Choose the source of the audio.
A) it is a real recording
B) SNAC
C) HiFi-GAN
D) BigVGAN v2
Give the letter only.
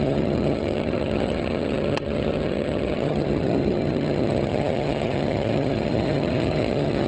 C